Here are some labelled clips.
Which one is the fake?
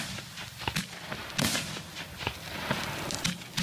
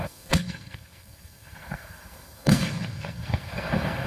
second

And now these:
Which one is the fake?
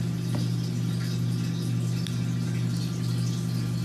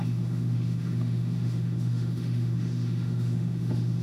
second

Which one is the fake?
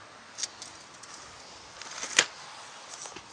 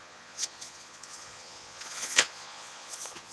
second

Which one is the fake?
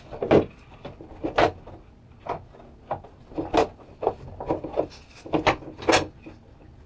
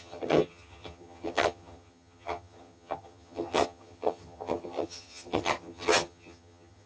second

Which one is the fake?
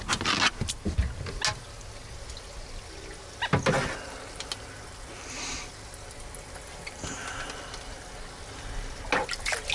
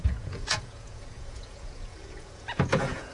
second